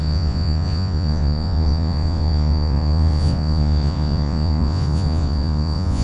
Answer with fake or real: fake